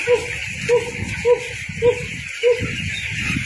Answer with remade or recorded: recorded